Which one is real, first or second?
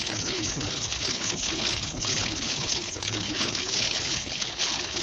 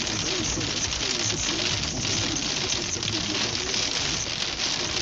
second